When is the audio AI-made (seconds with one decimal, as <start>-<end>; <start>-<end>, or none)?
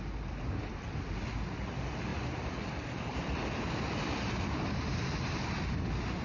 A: 2.1-4.9